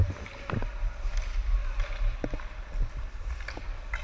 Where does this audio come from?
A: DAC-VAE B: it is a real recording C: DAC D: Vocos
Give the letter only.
B